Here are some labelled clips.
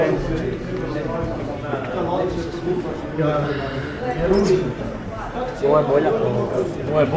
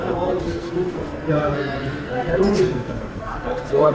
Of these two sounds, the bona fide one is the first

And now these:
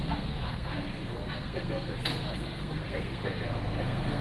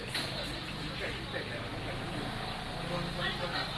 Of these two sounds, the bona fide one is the second